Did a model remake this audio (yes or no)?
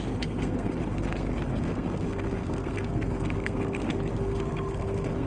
yes